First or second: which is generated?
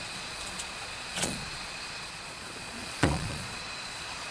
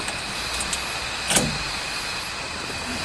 first